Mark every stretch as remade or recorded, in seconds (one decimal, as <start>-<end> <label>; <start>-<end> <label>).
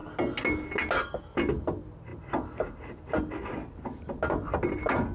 0.0-5.1 recorded